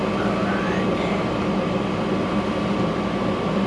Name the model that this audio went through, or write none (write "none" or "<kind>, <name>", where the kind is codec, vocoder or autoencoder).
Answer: none